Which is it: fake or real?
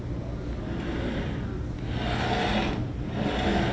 real